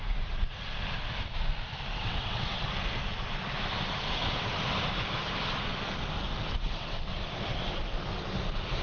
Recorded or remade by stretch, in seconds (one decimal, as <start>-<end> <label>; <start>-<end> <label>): 0.0-1.9 recorded; 1.9-2.6 remade; 2.6-6.5 recorded; 6.5-7.1 remade; 7.1-8.8 recorded